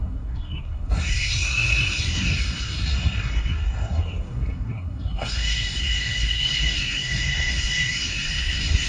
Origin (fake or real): fake